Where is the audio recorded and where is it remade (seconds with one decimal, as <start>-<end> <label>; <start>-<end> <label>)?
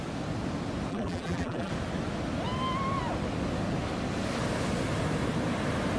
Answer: 0.0-0.9 recorded; 0.9-1.7 remade; 1.7-6.0 recorded